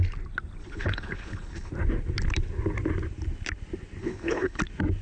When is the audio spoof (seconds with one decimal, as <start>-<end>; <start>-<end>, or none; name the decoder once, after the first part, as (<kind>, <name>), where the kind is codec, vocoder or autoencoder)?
0.6-1.7 (codec, HILCodec); 4.0-4.6